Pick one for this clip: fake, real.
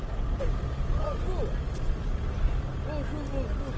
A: real